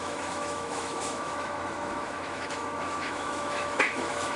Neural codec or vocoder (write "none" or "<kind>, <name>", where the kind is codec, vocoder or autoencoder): autoencoder, DAC-VAE